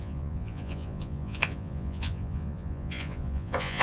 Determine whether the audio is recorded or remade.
remade